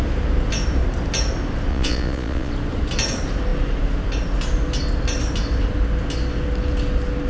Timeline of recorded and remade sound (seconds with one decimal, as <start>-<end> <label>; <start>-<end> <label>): 0.0-1.7 recorded; 1.7-2.5 remade; 2.5-7.3 recorded